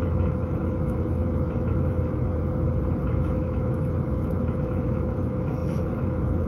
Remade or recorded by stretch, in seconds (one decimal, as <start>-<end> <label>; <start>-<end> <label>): 0.0-2.3 remade; 2.3-3.0 recorded; 3.0-6.5 remade